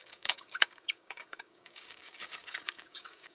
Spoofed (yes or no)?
yes